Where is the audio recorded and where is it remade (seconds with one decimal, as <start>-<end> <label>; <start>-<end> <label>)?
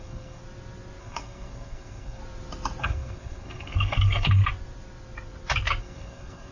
0.0-0.4 remade; 0.4-1.0 recorded; 1.0-2.2 remade; 2.2-2.8 recorded; 2.8-4.4 remade; 4.4-5.8 recorded; 5.8-6.5 remade